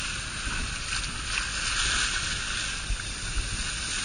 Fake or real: real